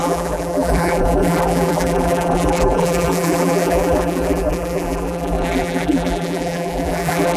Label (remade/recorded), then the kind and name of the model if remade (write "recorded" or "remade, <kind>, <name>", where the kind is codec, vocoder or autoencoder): remade, vocoder, BigVGAN v2